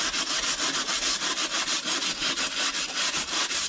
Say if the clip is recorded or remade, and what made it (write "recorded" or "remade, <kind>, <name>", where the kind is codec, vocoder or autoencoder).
recorded